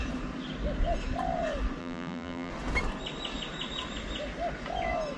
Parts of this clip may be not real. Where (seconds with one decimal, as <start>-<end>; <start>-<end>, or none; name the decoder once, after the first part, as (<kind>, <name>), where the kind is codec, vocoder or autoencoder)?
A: 1.8-2.5 (vocoder, BigVGAN v2)